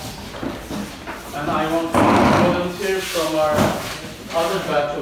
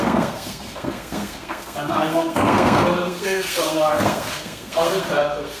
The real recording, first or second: first